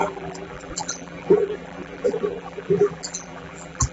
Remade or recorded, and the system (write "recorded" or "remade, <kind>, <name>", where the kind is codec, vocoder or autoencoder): remade, vocoder, BigVGAN v2